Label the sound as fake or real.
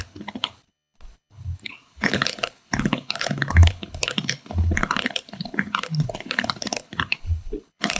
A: fake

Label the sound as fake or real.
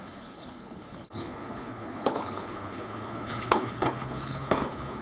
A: fake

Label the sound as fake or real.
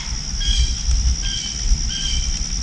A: real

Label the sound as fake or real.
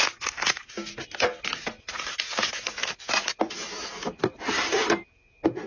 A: real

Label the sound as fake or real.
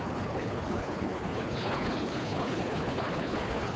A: fake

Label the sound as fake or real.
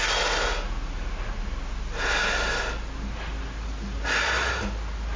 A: real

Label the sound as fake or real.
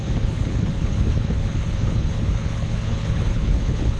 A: fake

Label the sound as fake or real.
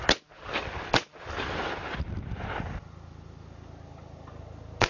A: real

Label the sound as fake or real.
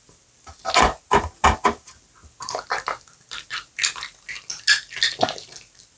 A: real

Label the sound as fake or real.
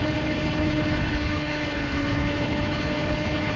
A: fake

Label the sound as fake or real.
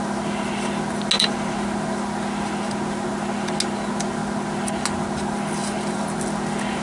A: real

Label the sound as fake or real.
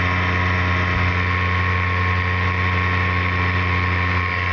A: real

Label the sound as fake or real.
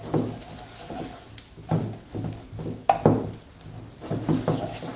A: real